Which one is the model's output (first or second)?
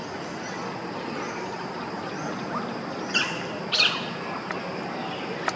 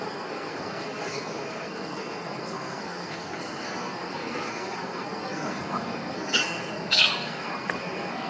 second